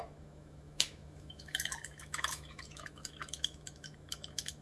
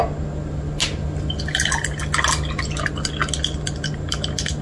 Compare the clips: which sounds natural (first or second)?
second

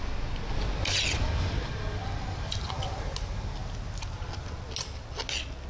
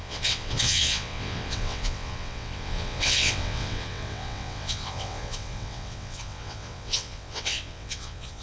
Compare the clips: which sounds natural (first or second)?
first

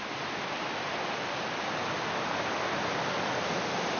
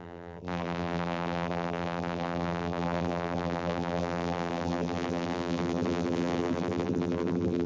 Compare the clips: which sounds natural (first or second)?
first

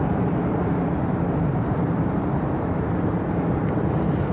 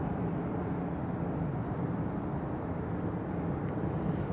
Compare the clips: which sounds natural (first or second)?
second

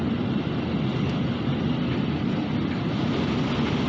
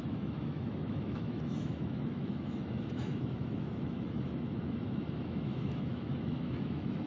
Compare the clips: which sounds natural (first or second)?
first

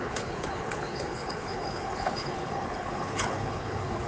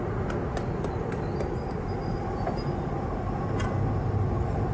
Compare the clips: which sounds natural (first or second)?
second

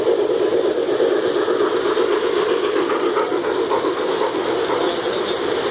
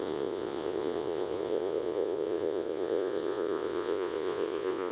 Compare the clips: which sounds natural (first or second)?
first